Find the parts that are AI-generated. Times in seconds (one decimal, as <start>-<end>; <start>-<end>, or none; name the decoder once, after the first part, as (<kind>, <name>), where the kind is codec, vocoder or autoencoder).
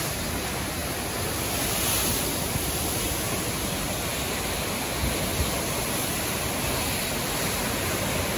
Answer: none